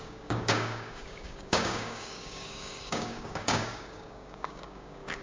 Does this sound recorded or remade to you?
remade